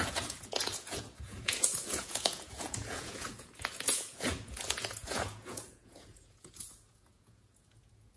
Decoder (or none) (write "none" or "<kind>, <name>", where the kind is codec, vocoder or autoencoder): vocoder, Vocos